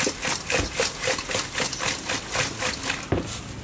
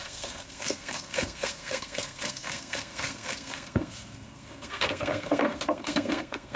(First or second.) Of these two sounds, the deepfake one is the second